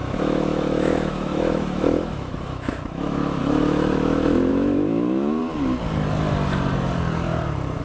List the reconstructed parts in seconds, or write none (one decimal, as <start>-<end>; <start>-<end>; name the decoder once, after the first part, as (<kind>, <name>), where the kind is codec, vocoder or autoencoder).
0.0-5.4 (autoencoder, DAC-VAE)